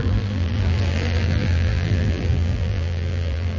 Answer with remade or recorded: remade